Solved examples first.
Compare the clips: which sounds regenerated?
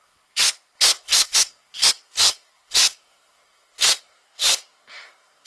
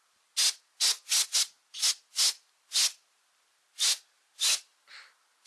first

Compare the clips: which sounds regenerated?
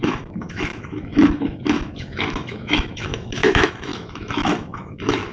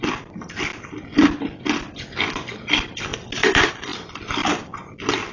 first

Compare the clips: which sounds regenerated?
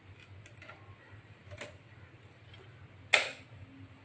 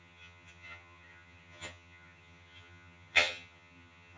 second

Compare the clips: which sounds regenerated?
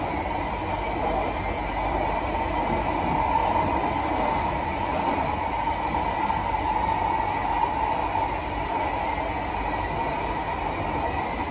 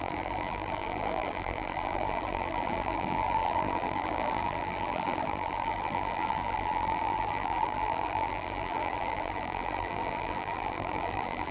second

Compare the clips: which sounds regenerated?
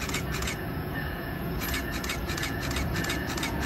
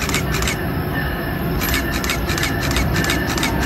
first